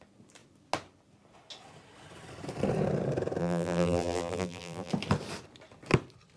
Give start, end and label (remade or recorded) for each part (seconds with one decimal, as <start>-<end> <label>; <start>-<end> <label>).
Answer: 0.0-3.4 recorded; 3.4-4.9 remade; 4.9-6.4 recorded